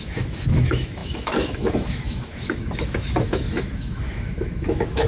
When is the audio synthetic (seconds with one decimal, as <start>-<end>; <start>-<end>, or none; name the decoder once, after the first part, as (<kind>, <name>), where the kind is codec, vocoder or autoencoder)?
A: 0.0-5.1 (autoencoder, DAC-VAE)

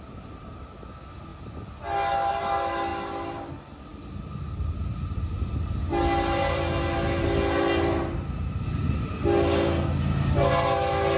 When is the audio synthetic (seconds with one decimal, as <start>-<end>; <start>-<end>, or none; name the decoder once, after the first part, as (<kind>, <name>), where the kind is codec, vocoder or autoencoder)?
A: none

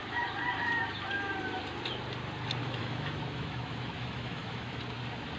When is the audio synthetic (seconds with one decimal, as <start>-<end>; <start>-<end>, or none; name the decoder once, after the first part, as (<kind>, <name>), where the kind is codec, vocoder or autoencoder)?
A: 2.6-4.8 (autoencoder, DAC-VAE)

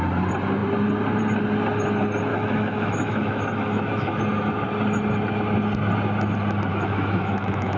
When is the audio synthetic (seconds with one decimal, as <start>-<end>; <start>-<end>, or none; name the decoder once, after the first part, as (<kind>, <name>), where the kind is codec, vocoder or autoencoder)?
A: 2.3-4.2 (autoencoder, DAC-VAE); 6.7-7.8

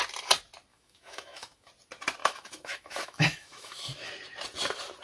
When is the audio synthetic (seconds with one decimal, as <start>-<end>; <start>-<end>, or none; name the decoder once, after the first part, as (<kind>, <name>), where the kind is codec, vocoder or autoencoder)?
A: 0.7-1.7 (autoencoder, DAC-VAE); 2.2-4.1

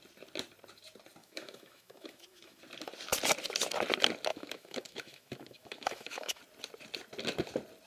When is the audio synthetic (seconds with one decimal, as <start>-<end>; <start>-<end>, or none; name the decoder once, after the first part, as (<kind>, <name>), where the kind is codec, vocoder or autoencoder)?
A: 1.2-2.6 (autoencoder, DAC-VAE); 4.3-6.4